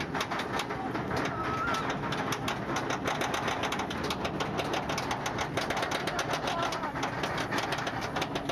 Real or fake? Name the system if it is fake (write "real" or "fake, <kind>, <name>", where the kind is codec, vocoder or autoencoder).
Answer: real